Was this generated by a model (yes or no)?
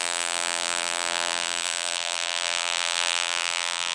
yes